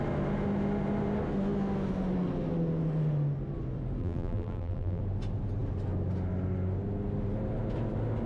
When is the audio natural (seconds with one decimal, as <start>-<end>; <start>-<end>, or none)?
0.0-4.0; 5.0-8.3

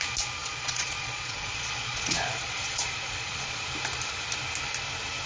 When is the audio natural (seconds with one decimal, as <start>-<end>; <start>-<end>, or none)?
0.0-0.4; 3.6-5.3

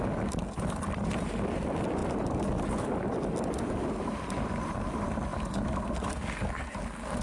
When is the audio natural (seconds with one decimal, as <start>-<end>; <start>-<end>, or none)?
0.0-7.2

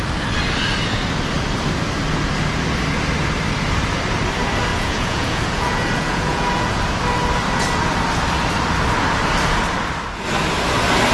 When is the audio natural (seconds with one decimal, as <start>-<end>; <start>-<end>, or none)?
0.0-4.7; 6.8-11.1